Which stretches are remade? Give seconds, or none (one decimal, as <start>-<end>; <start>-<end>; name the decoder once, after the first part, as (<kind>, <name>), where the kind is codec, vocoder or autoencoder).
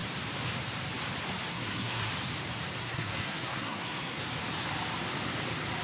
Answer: 1.5-2.1 (codec, SNAC); 2.8-4.2